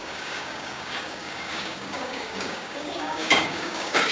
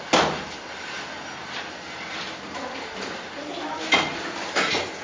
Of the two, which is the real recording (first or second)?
second